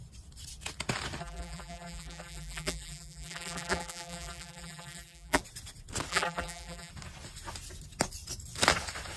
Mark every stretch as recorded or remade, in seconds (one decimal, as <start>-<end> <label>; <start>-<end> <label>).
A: 0.0-1.2 recorded; 1.2-5.4 remade; 5.4-6.1 recorded; 6.1-6.9 remade; 6.9-9.2 recorded